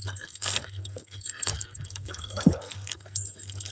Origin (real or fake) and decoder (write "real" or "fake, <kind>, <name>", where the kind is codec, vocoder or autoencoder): fake, codec, SNAC